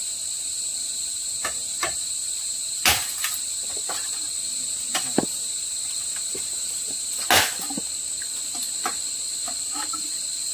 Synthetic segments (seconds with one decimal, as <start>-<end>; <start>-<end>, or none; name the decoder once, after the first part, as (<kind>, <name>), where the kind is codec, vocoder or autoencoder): 0.0-7.1 (vocoder, BigVGAN v2); 9.9-10.5